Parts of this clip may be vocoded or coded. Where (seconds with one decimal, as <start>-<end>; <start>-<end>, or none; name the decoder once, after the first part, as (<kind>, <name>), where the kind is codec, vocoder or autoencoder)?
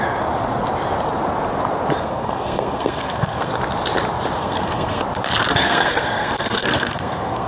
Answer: 2.0-3.5 (codec, SNAC); 4.4-5.0; 5.5-7.5